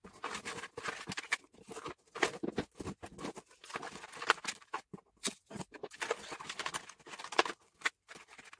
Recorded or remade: recorded